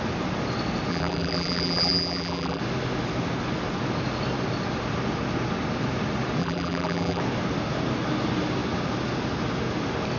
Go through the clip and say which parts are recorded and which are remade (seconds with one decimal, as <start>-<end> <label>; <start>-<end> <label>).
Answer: 0.0-0.9 recorded; 0.9-2.6 remade; 2.6-6.4 recorded; 6.4-7.2 remade; 7.2-10.2 recorded

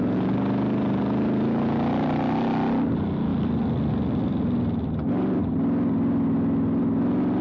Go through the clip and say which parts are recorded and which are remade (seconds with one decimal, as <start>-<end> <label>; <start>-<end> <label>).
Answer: 0.0-3.3 recorded; 3.3-5.5 remade; 5.5-7.4 recorded

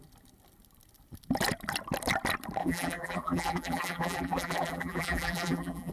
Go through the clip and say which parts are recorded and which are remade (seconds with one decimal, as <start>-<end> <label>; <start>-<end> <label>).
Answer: 0.0-2.6 recorded; 2.6-5.9 remade